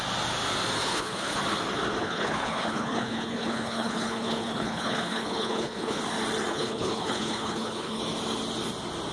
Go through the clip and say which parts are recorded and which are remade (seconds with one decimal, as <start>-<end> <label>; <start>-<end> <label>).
0.0-0.8 recorded; 0.8-1.4 remade; 1.4-2.0 recorded; 2.0-6.0 remade; 6.0-6.5 recorded; 6.5-8.0 remade; 8.0-9.1 recorded